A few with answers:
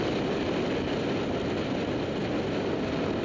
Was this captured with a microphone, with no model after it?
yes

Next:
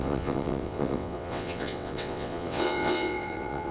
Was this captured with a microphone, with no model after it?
no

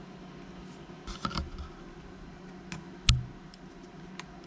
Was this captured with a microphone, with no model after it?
yes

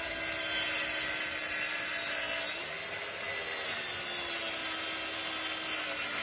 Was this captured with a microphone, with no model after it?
yes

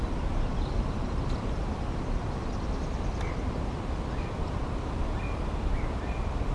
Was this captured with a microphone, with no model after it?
no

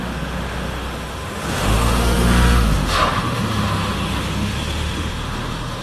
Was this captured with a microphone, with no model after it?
no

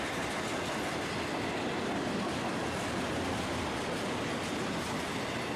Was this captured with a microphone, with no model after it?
yes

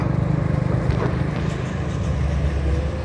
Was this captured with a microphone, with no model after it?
yes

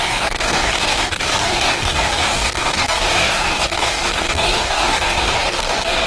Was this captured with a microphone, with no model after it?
no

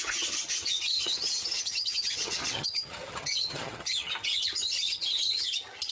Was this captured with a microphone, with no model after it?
no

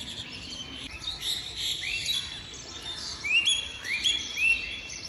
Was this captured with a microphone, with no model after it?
no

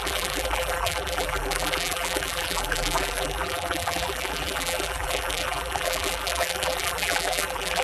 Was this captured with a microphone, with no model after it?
no